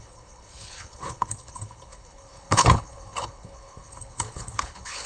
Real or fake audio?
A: fake